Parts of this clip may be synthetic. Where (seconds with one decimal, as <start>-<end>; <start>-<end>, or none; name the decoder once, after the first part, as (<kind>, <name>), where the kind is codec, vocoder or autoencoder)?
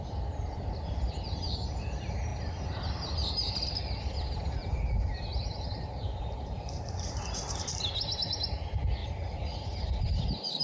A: 2.3-3.6 (vocoder, BigVGAN v2); 4.6-7.9; 9.0-10.6